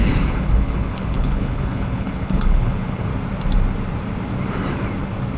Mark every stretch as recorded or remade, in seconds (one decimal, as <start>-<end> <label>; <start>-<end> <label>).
0.0-3.1 remade; 3.1-5.4 recorded